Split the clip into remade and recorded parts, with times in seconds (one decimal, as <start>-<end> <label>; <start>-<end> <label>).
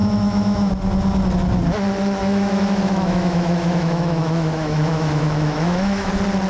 0.0-0.7 remade; 0.7-2.2 recorded; 2.2-6.1 remade; 6.1-6.5 recorded